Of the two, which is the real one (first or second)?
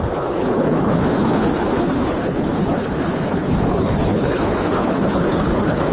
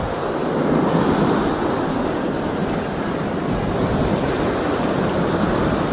second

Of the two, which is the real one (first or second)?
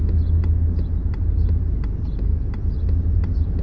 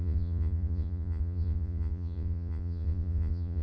first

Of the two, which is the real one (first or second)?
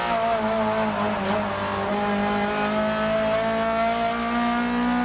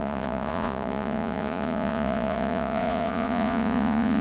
first